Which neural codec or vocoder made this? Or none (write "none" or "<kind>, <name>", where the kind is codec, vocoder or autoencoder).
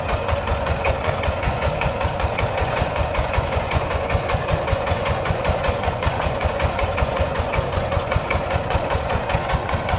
vocoder, Vocos